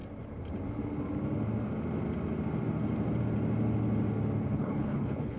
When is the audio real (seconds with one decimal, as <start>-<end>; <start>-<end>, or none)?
0.0-4.5